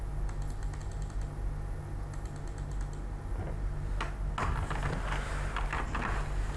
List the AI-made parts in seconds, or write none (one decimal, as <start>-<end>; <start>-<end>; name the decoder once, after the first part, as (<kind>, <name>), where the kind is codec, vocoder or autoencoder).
none